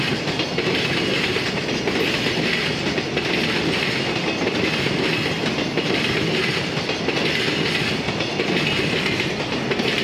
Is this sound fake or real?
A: real